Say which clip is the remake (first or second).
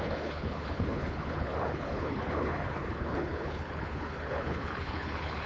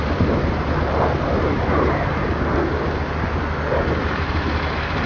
first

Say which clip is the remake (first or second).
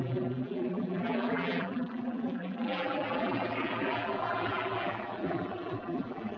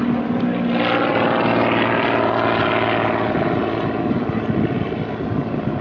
first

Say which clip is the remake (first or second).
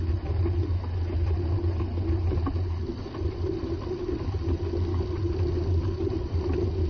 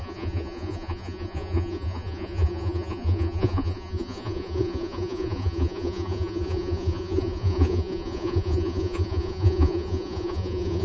second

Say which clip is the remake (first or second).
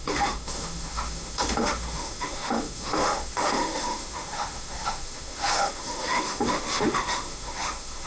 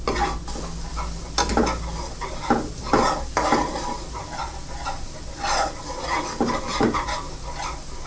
first